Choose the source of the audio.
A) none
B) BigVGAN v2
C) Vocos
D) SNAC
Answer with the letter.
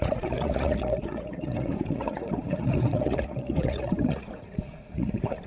C